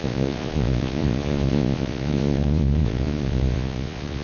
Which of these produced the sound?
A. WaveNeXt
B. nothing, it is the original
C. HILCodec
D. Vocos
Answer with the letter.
D